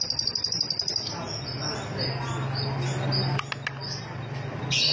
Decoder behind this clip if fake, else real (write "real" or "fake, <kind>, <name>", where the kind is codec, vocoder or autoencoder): real